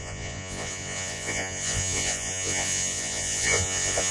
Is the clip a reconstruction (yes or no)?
yes